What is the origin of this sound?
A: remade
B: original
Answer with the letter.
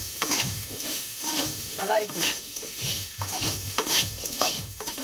A